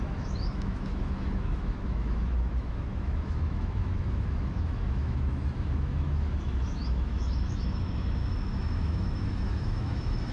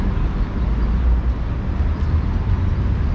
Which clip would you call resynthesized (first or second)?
first